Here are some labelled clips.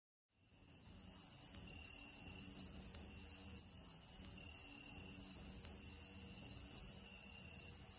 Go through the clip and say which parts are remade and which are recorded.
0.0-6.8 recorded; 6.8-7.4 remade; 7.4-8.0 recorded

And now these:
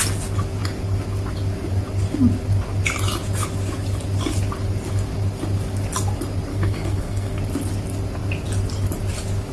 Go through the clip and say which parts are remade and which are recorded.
0.0-6.5 recorded; 6.5-7.4 remade; 7.4-9.5 recorded

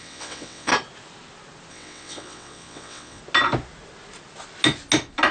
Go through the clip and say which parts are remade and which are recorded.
0.0-0.7 remade; 0.7-1.7 recorded; 1.7-3.2 remade; 3.2-5.3 recorded

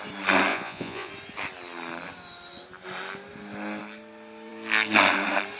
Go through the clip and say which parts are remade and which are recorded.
0.0-0.5 recorded; 0.5-1.1 remade; 1.1-5.6 recorded

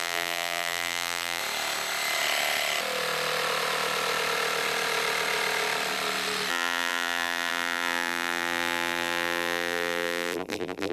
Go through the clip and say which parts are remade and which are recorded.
0.0-1.4 remade; 1.4-6.5 recorded; 6.5-10.9 remade